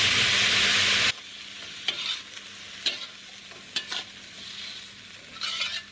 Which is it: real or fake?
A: real